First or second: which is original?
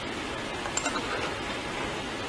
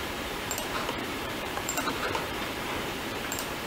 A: first